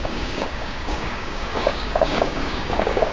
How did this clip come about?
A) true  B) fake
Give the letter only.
B